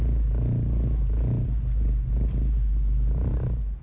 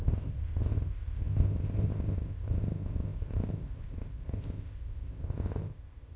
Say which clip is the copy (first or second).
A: second